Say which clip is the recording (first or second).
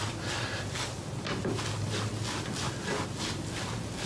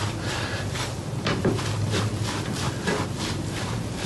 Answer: first